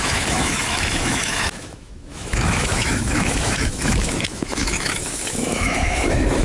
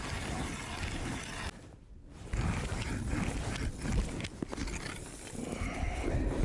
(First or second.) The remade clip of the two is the first